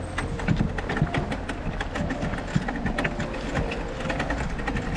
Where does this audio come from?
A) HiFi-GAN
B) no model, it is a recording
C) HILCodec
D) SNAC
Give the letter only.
B